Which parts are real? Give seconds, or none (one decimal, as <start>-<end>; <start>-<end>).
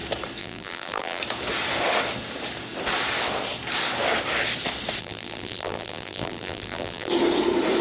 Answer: 0.0-0.4; 1.2-5.0; 7.1-7.8